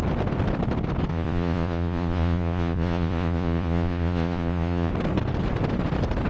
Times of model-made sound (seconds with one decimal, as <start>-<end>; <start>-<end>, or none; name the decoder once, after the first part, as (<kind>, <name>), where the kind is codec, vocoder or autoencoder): 1.1-4.9 (vocoder, Vocos)